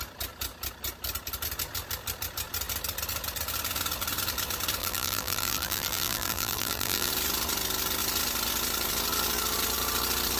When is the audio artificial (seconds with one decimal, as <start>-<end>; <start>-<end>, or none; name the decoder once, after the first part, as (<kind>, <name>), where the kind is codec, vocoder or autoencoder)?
4.8-7.1 (vocoder, BigVGAN v2)